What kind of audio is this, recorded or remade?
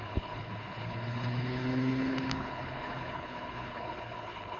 remade